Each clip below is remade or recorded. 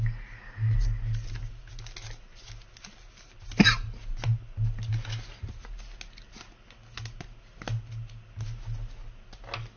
recorded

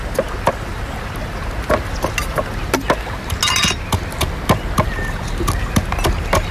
recorded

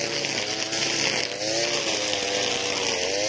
recorded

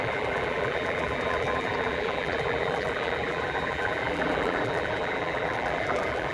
remade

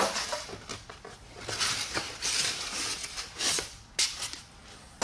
recorded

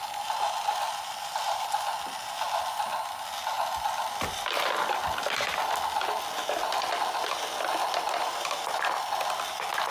recorded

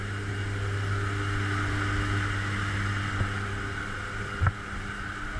recorded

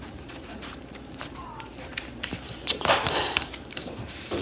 remade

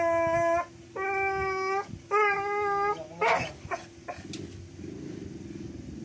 recorded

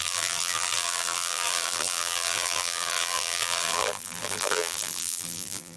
remade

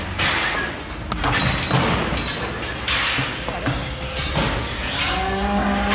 recorded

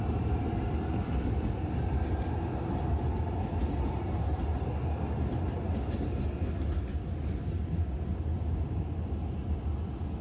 recorded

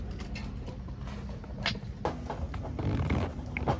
recorded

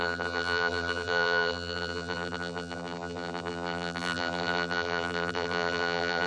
remade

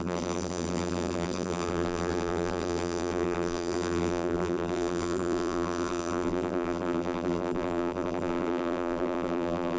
remade